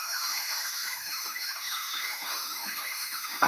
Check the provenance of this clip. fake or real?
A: fake